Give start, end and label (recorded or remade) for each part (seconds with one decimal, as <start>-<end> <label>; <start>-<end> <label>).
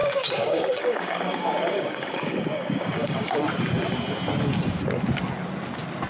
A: 0.0-3.4 remade; 3.4-6.1 recorded